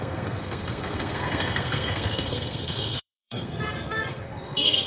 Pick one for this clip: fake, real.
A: fake